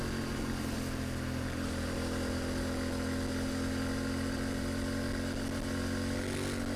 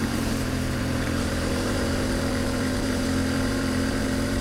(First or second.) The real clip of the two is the first